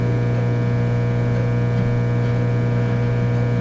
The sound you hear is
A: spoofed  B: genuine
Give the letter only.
B